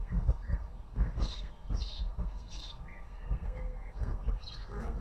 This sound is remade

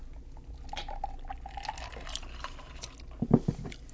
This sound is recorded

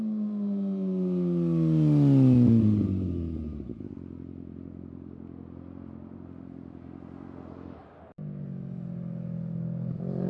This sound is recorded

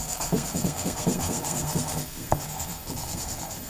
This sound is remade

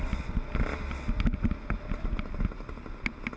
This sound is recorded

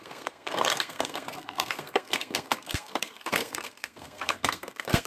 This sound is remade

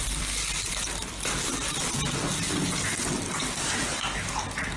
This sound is recorded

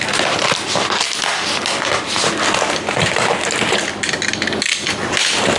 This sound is recorded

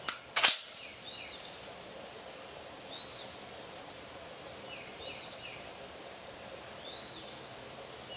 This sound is recorded